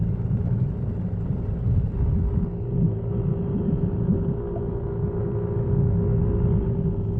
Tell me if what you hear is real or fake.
real